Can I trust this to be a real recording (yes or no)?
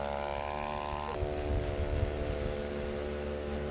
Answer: yes